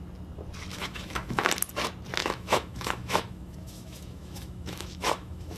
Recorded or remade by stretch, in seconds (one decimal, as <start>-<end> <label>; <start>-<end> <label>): 0.0-0.7 recorded; 0.7-1.5 remade; 1.5-2.2 recorded; 2.2-5.6 remade